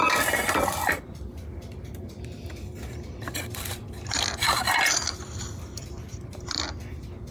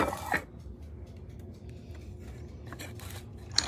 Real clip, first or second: second